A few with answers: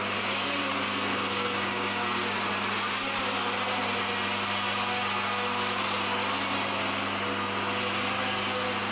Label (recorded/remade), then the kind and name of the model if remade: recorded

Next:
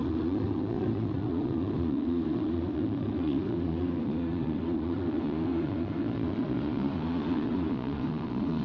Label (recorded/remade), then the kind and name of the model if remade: remade, vocoder, Vocos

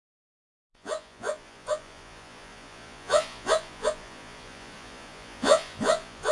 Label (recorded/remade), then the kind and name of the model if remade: remade, vocoder, Vocos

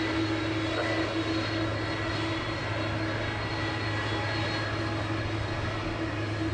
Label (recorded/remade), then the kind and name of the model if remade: recorded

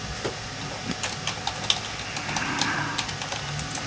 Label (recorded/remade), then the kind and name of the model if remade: recorded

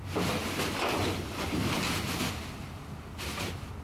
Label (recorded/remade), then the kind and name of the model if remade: recorded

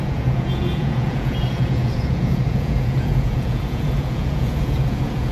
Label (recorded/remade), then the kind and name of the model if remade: remade, vocoder, Vocos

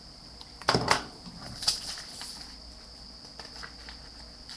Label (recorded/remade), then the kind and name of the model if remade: remade, vocoder, BigVGAN v2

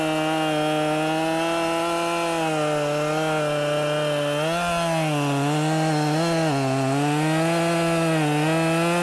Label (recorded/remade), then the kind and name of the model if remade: recorded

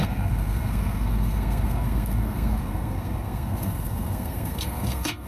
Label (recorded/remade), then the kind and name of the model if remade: remade, codec, SNAC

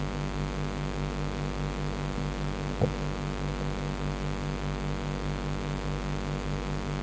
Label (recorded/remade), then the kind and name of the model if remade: remade, vocoder, BigVGAN v2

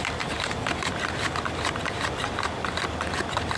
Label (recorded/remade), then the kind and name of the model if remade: recorded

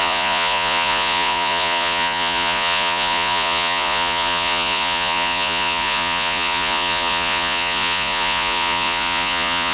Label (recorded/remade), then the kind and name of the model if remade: remade, vocoder, Vocos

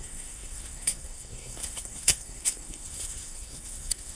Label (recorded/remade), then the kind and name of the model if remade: remade, codec, SNAC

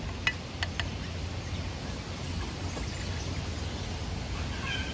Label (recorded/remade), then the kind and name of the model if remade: recorded